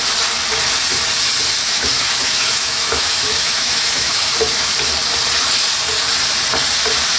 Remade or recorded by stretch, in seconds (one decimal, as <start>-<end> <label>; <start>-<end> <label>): 0.0-1.6 recorded; 1.6-4.7 remade; 4.7-7.2 recorded

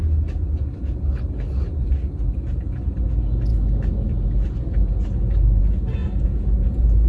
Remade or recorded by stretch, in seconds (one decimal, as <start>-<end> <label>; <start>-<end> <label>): 0.0-6.0 recorded; 6.0-7.1 remade